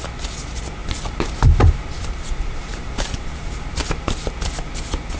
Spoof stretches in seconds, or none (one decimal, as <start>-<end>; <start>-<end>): 0.8-3.9